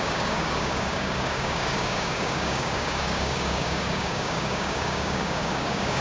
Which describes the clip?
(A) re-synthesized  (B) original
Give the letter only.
A